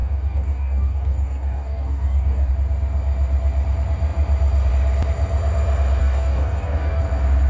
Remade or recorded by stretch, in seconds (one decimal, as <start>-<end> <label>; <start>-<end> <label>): 0.0-2.5 remade; 2.5-6.0 recorded; 6.0-7.0 remade; 7.0-7.5 recorded